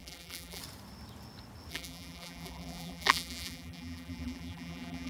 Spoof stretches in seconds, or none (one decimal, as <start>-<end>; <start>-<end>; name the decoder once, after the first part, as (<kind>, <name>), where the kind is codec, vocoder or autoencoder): 0.0-0.6 (vocoder, BigVGAN v2); 1.7-5.1